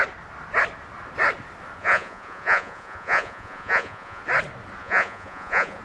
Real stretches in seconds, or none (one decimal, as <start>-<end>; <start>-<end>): 0.0-1.8; 4.2-4.8